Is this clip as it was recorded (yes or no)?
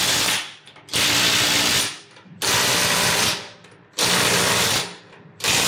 yes